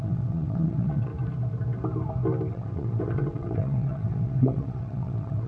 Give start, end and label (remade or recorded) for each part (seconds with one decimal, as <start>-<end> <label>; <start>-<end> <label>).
0.0-1.1 remade; 1.1-2.5 recorded; 2.5-5.5 remade